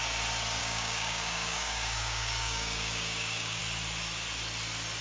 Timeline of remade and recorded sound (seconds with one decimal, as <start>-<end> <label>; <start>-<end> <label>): 0.0-0.6 recorded; 0.6-3.6 remade; 3.6-5.0 recorded